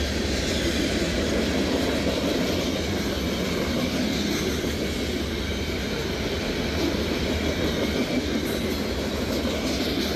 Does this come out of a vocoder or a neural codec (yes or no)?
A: no